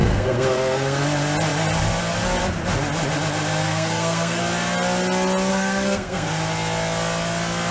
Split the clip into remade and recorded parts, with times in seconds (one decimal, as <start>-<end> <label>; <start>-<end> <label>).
0.0-1.0 remade; 1.0-3.6 recorded; 3.6-4.4 remade; 4.4-5.5 recorded; 5.5-6.3 remade; 6.3-7.7 recorded